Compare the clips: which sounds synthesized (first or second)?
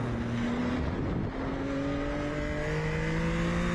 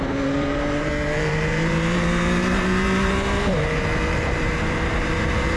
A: second